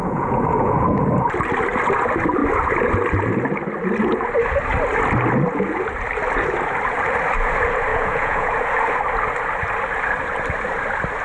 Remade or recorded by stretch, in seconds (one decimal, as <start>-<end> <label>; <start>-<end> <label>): 0.0-1.0 remade; 1.0-7.9 recorded; 7.9-8.5 remade; 8.5-11.2 recorded

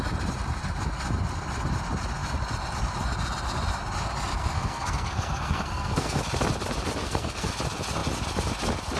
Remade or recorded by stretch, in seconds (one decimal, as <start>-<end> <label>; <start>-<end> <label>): 0.0-4.3 recorded; 4.3-6.2 remade; 6.2-7.0 recorded; 7.0-7.5 remade; 7.5-9.0 recorded

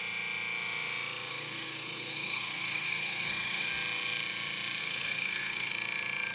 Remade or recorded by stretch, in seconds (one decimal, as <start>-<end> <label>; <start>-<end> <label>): 0.0-1.3 recorded; 1.3-3.7 remade; 3.7-4.8 recorded; 4.8-5.7 remade; 5.7-6.3 recorded

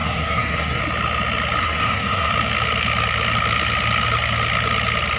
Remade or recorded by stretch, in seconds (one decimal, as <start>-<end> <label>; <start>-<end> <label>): 0.0-0.8 remade; 0.8-1.6 recorded; 1.6-2.3 remade; 2.3-5.2 recorded

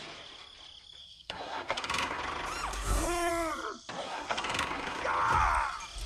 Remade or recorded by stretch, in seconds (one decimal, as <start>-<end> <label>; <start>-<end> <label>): 0.0-1.0 recorded; 1.0-2.2 remade; 2.2-2.7 recorded; 2.7-3.3 remade; 3.3-4.0 recorded; 4.0-5.0 remade; 5.0-6.1 recorded

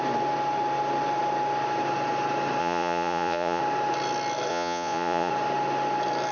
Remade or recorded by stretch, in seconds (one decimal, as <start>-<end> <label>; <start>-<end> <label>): 0.0-2.6 recorded; 2.6-3.6 remade; 3.6-4.5 recorded; 4.5-5.3 remade; 5.3-6.3 recorded

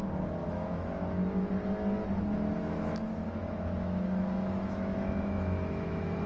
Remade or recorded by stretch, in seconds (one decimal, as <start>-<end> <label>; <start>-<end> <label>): 0.0-0.4 recorded; 0.4-1.5 remade; 1.5-2.6 recorded; 2.6-6.3 remade